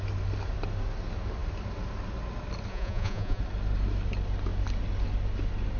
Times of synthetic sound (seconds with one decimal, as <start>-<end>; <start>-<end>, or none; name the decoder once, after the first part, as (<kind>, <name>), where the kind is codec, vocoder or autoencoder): 2.7-3.4 (vocoder, Vocos)